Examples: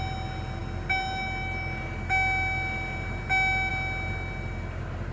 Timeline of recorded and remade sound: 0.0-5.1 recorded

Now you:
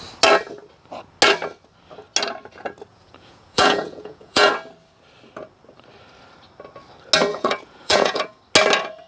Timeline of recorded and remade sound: 0.0-2.9 recorded; 2.9-4.5 remade; 4.5-7.3 recorded; 7.3-8.4 remade; 8.4-9.1 recorded

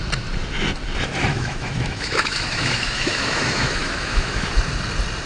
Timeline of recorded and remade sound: 0.0-1.3 recorded; 1.3-4.5 remade; 4.5-5.3 recorded

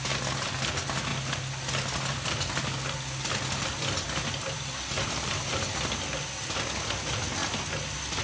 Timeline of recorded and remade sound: 0.0-5.0 recorded; 5.0-5.7 remade; 5.7-8.2 recorded

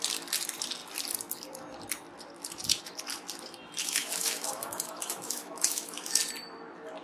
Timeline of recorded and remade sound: 0.0-3.8 recorded; 3.8-6.1 remade; 6.1-7.0 recorded

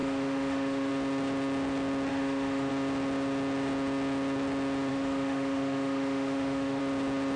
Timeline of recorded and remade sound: 0.0-0.9 remade; 0.9-2.1 recorded; 2.1-2.7 remade; 2.7-4.9 recorded; 4.9-6.8 remade; 6.8-7.4 recorded

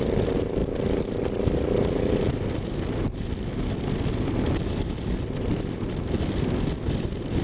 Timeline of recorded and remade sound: 0.0-7.4 recorded

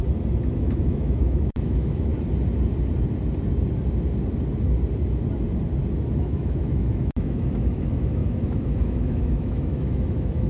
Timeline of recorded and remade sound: 0.0-0.5 recorded; 0.5-2.1 remade; 2.1-6.1 recorded; 6.1-10.5 remade